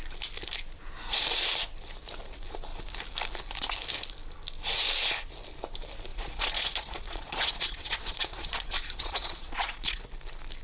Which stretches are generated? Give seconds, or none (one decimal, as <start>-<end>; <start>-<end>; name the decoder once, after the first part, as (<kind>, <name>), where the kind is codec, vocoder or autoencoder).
6.1-10.0 (vocoder, Vocos)